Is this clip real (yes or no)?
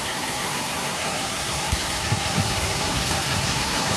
no